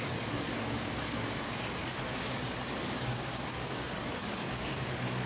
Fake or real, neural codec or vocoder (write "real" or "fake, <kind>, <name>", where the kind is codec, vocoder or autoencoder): fake, codec, DAC